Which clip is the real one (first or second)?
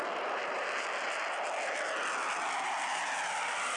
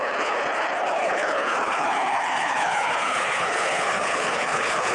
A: first